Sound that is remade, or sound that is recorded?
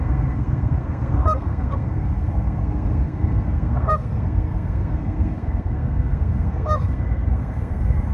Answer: remade